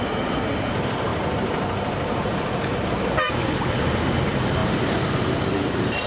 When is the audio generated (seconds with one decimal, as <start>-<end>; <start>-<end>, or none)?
1.1-3.3; 4.6-6.1